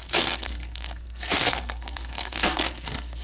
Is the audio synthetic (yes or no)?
yes